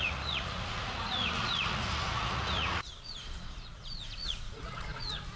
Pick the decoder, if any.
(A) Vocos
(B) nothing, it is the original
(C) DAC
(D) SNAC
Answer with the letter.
A